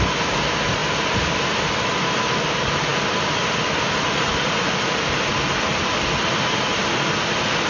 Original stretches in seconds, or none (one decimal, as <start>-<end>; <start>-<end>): 0.0-7.7